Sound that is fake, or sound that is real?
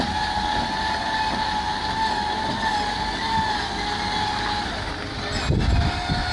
real